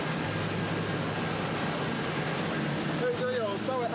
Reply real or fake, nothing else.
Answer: real